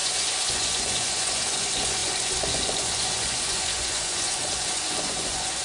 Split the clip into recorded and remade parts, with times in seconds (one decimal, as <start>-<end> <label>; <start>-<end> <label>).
0.0-5.6 remade